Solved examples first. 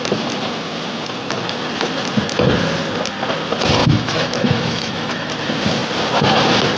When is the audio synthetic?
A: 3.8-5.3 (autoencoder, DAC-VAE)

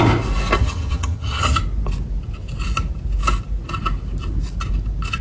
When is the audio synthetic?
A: 0.6-1.6 (vocoder, HiFi-GAN)

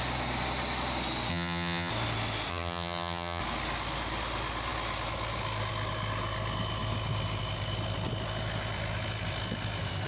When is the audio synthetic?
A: 1.3-1.9 (vocoder, HiFi-GAN); 2.5-3.4

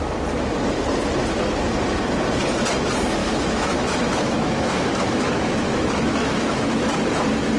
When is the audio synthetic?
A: 3.2-6.8 (autoencoder, DAC-VAE)

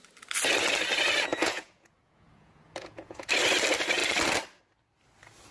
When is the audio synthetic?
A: 1.3-3.3 (vocoder, Vocos)

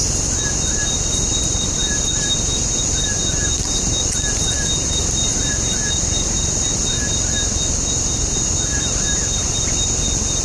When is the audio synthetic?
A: none

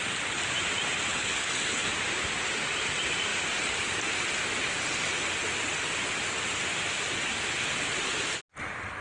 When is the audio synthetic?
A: 1.1-1.9 (codec, HILCodec)

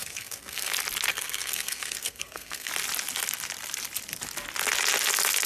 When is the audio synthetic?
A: 0.0-0.7 (codec, SNAC); 1.1-2.7